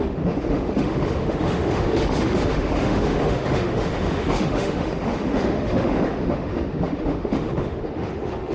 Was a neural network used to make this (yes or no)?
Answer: yes